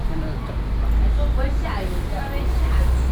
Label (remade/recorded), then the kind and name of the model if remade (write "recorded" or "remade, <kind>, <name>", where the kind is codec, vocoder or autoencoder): recorded